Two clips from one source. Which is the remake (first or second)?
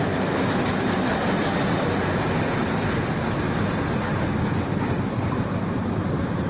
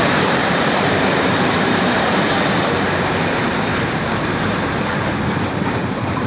second